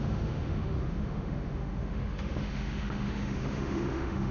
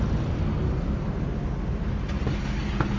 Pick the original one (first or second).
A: second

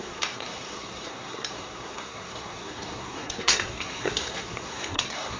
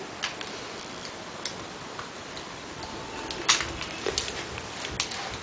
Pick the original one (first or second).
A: second